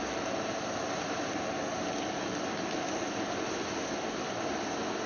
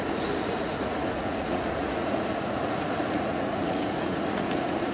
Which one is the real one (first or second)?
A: first